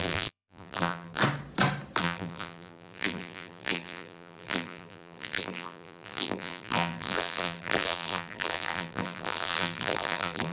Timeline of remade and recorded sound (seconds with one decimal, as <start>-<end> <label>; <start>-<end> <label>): 0.0-1.2 remade; 1.2-2.0 recorded; 2.0-10.5 remade